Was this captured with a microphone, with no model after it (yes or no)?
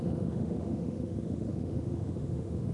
no